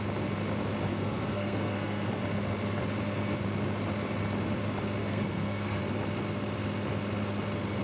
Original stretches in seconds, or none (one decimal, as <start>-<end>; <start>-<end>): 0.0-0.9; 2.1-5.0; 5.8-7.8